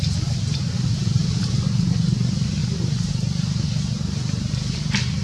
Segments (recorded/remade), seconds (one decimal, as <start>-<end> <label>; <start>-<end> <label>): 0.0-5.2 recorded